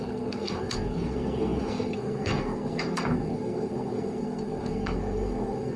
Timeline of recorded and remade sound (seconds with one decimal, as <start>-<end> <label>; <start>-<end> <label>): 0.0-5.8 remade

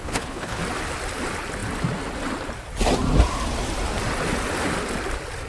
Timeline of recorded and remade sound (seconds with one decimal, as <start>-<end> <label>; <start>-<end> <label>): 0.0-0.6 remade; 0.6-5.5 recorded

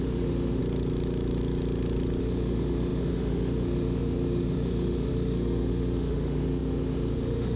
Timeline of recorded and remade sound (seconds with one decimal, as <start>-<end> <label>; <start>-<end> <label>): 0.0-0.6 remade; 0.6-2.2 recorded; 2.2-7.6 remade

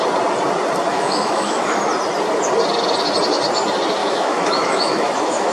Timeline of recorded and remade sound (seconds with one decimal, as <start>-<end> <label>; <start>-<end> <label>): 0.0-0.9 recorded; 0.9-1.8 remade; 1.8-4.0 recorded; 4.0-5.5 remade

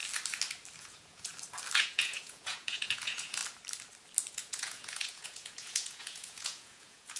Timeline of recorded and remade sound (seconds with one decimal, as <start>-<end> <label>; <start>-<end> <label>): 0.0-0.8 recorded; 0.8-1.3 remade; 1.3-1.8 recorded; 1.8-3.4 remade; 3.4-4.3 recorded; 4.3-7.2 remade

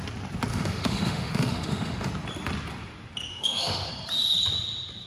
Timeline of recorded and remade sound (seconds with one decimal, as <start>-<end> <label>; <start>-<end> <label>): 0.0-0.5 recorded; 0.5-2.1 remade; 2.1-3.3 recorded; 3.3-3.9 remade; 3.9-5.1 recorded